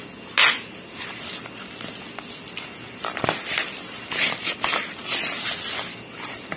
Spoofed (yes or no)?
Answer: no